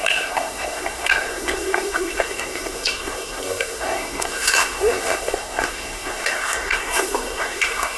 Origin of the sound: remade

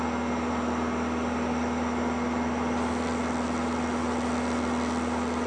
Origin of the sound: recorded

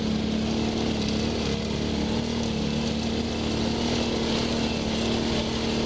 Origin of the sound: recorded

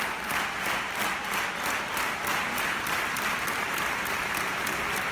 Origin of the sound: recorded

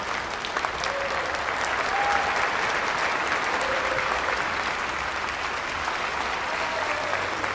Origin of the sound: recorded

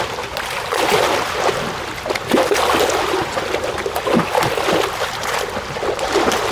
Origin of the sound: recorded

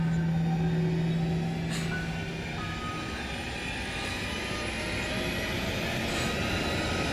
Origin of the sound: recorded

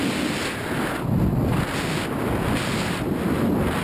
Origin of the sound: recorded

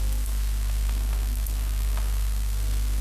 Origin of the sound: remade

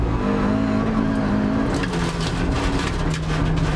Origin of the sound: recorded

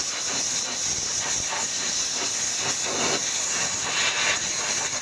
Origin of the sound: recorded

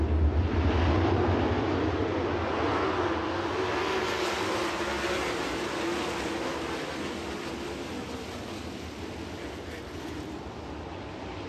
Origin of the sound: recorded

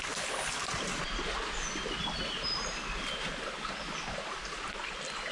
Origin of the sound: recorded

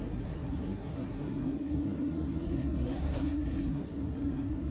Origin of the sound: remade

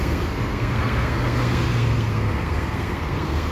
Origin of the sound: remade